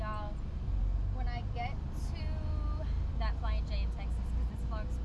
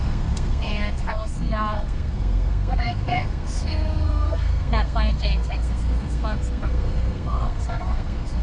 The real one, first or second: first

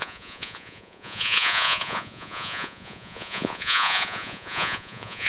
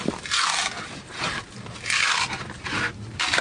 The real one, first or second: second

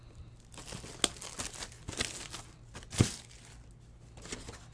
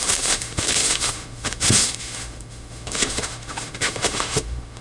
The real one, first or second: first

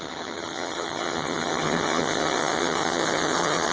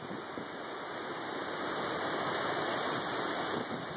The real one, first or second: second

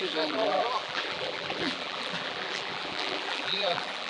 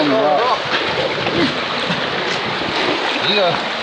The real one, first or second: second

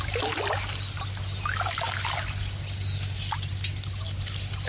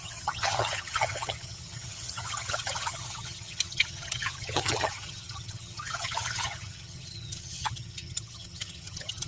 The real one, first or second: first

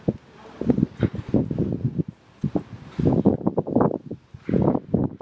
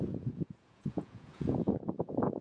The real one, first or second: first